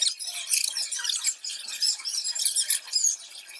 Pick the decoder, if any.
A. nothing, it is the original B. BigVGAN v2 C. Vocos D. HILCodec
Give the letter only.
B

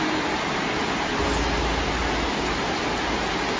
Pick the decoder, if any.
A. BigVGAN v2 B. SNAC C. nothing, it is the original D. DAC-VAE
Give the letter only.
C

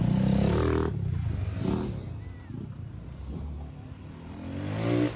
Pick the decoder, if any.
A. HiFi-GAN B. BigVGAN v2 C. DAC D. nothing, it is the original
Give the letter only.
D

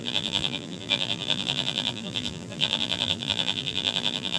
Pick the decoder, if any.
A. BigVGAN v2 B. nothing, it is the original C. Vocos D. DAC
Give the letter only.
A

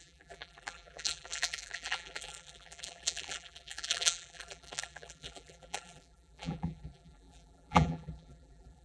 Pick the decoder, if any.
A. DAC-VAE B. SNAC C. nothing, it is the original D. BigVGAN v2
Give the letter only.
D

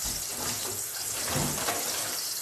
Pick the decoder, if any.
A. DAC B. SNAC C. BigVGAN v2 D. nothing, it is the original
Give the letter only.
D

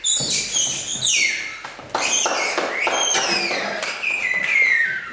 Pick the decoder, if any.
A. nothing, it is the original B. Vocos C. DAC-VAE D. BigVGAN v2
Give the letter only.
A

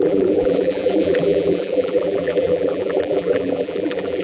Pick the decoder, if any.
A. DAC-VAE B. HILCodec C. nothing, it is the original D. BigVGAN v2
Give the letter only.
D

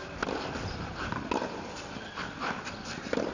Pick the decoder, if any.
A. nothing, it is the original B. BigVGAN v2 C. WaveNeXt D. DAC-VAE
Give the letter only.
A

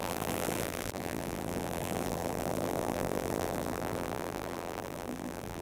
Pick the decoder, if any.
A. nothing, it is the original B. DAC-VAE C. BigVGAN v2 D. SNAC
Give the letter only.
C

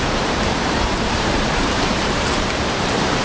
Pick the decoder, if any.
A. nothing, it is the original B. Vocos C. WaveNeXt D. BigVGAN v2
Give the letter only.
D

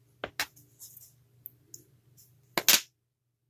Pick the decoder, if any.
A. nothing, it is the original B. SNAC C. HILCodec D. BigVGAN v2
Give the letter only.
A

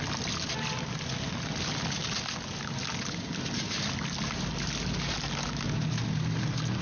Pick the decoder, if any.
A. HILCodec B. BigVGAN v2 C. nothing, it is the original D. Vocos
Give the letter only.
C